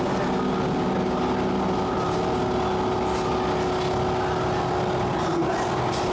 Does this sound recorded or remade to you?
recorded